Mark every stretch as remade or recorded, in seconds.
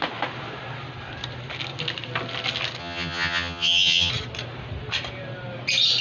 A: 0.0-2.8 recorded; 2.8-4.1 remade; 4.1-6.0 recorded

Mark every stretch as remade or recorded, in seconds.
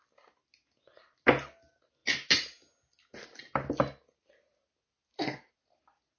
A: 0.0-6.2 recorded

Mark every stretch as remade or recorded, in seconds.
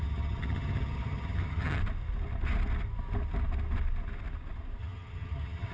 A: 0.0-1.8 remade; 1.8-4.8 recorded; 4.8-5.7 remade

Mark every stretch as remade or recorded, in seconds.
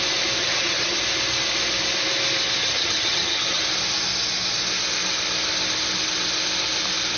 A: 0.0-0.4 recorded; 0.4-1.0 remade; 1.0-2.6 recorded; 2.6-3.6 remade; 3.6-7.2 recorded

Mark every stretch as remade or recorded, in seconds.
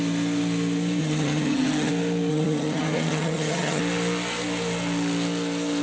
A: 0.0-1.0 recorded; 1.0-1.9 remade; 1.9-2.3 recorded; 2.3-3.8 remade; 3.8-5.8 recorded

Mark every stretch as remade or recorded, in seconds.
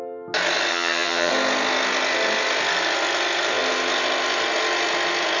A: 0.0-0.7 recorded; 0.7-1.3 remade; 1.3-5.4 recorded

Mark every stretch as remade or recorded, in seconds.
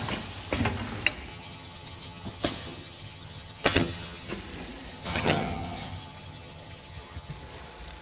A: 0.0-1.3 recorded; 1.3-4.3 remade; 4.3-4.9 recorded; 4.9-7.3 remade; 7.3-8.0 recorded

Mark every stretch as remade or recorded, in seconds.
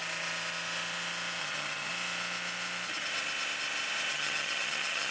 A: 0.0-1.4 recorded; 1.4-1.9 remade; 1.9-4.1 recorded; 4.1-5.1 remade